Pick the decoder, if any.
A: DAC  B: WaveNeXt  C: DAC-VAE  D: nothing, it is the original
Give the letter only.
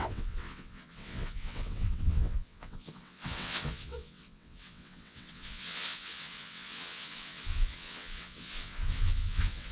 B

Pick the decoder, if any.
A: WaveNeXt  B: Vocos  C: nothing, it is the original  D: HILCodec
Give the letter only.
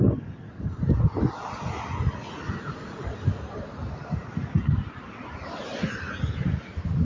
C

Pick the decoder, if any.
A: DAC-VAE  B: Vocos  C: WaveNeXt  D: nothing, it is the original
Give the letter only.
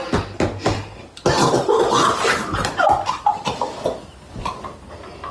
D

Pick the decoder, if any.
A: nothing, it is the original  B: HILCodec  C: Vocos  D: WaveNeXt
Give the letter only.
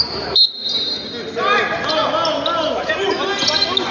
A